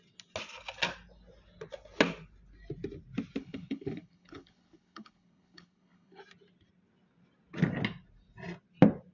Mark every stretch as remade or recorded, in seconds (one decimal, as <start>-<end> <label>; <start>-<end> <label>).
0.0-3.4 recorded; 3.4-6.2 remade; 6.2-9.1 recorded